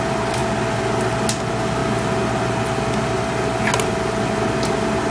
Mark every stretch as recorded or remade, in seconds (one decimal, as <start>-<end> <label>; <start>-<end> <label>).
0.0-5.1 recorded